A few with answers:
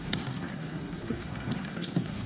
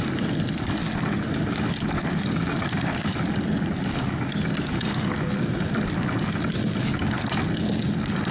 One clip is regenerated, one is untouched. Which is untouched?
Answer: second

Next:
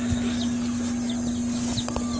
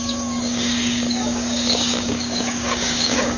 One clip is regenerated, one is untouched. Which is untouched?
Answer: first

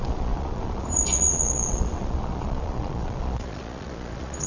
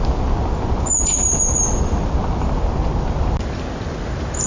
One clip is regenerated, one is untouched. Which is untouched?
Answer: second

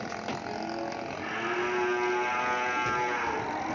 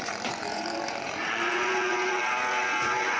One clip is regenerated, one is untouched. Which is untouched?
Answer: first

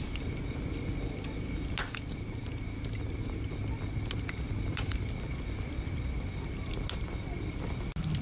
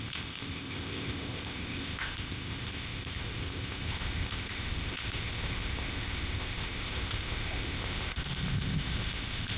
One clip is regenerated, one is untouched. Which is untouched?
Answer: first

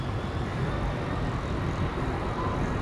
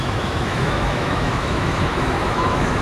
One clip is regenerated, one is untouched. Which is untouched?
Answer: first